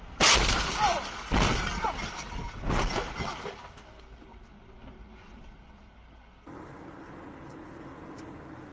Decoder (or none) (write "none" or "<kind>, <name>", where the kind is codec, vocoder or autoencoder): none